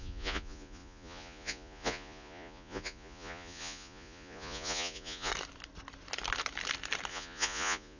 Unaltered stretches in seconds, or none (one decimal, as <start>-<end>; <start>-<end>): 5.3-7.1